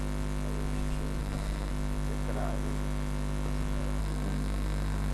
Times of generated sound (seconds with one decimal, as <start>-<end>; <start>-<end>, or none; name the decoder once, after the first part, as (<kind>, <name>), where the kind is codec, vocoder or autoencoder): 1.2-1.7 (codec, SNAC); 4.0-5.1